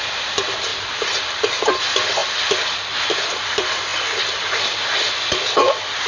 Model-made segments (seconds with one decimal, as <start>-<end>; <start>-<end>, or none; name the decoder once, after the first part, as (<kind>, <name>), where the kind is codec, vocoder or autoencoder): 2.2-3.5 (vocoder, BigVGAN v2)